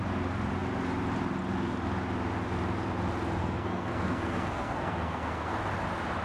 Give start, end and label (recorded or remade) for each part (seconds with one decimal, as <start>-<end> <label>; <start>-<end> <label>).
0.0-3.4 recorded; 3.4-5.6 remade; 5.6-6.2 recorded